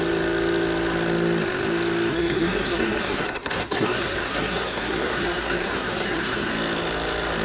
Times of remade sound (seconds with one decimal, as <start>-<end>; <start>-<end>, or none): 2.1-6.5